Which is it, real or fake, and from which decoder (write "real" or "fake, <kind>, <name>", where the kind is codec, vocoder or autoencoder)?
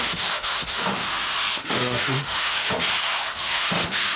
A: fake, autoencoder, DAC-VAE